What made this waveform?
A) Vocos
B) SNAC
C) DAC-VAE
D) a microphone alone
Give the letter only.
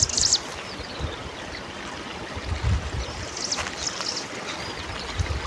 D